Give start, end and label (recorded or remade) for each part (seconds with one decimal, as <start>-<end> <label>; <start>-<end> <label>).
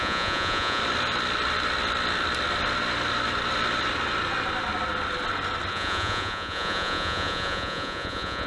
0.0-0.8 remade; 0.8-5.7 recorded; 5.7-8.5 remade